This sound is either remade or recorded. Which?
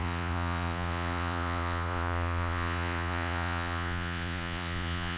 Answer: remade